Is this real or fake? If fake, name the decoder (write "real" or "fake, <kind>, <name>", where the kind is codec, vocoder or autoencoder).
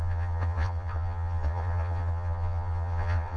fake, vocoder, Vocos